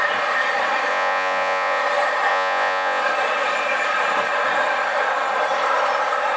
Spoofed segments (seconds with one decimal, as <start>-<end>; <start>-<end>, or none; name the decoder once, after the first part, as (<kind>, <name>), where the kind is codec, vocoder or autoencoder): 0.9-1.8 (vocoder, Vocos); 2.3-3.0